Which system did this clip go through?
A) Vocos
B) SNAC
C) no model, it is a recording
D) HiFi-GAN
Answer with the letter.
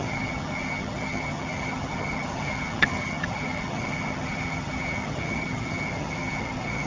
D